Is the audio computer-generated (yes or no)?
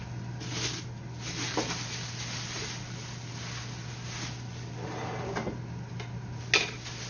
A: no